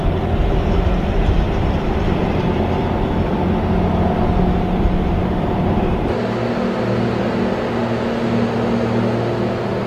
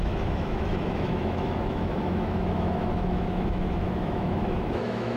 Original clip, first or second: first